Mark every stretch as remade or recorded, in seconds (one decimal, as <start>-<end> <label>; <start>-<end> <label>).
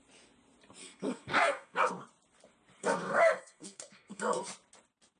0.0-0.8 recorded; 0.8-1.9 remade; 1.9-2.8 recorded; 2.8-4.4 remade; 4.4-5.2 recorded